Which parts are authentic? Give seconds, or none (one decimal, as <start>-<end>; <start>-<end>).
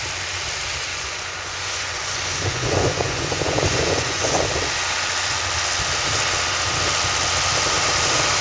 0.0-0.9; 4.4-8.4